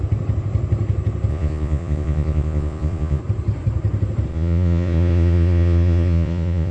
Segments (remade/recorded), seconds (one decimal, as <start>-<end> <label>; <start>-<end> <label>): 0.0-1.3 recorded; 1.3-3.2 remade; 3.2-4.3 recorded; 4.3-6.7 remade